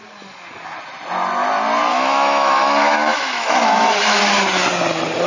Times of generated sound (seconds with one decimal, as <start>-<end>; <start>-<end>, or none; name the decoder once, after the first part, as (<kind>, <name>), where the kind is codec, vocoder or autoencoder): 1.9-4.2 (autoencoder, DAC-VAE)